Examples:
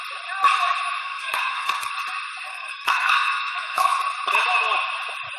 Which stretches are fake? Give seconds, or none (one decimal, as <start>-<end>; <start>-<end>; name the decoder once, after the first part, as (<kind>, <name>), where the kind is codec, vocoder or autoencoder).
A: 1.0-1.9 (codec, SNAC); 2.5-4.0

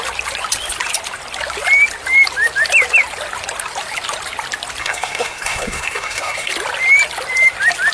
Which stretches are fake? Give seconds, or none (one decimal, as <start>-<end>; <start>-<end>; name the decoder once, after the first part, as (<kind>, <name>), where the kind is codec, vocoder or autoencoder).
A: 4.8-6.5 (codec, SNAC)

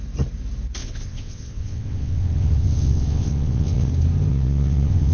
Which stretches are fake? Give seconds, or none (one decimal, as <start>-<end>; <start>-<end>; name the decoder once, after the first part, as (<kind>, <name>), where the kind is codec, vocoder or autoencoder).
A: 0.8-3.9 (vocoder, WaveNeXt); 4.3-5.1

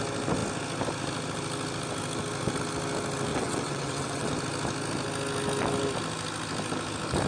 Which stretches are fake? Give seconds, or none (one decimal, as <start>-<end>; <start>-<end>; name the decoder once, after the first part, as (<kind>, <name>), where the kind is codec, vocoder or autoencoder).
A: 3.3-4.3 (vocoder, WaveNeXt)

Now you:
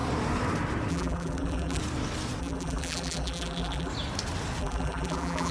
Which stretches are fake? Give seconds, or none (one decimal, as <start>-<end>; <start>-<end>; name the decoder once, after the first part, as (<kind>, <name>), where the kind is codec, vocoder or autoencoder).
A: 0.9-1.8 (vocoder, BigVGAN v2); 2.4-3.9; 4.6-5.5

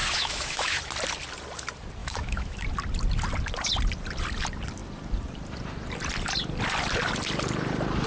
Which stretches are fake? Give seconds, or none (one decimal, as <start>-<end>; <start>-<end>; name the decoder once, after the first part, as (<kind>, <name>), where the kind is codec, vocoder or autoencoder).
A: 0.0-0.8 (autoencoder, DAC-VAE); 2.0-2.6

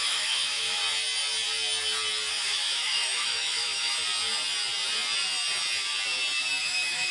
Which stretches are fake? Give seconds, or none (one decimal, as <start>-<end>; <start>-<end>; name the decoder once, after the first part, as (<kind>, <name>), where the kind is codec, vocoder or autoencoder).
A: 0.0-0.8 (autoencoder, DAC-VAE); 2.3-3.9; 6.6-7.1

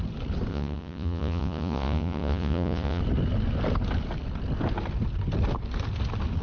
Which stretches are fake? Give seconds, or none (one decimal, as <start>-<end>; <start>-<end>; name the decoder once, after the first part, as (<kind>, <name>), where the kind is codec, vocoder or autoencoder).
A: 0.5-3.0 (vocoder, Vocos)